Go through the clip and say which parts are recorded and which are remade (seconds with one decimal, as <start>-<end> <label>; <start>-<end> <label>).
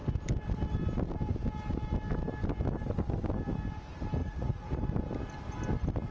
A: 0.0-4.2 recorded; 4.2-4.8 remade; 4.8-6.1 recorded